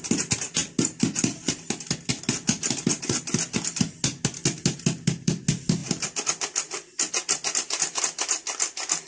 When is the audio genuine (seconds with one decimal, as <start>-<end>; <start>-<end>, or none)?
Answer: 0.0-9.1